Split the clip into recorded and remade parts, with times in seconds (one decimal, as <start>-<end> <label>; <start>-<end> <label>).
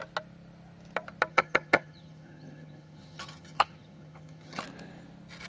0.0-1.3 recorded; 1.3-4.6 remade; 4.6-5.5 recorded